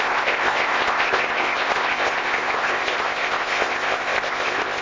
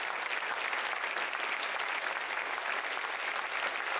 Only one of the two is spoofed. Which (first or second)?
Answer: first